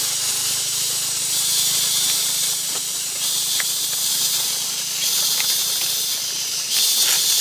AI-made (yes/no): no